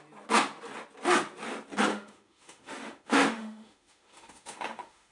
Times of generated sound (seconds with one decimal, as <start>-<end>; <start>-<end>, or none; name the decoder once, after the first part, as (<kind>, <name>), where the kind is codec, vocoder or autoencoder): 1.9-5.1 (autoencoder, DAC-VAE)